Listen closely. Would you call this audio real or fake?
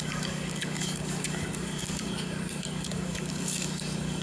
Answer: fake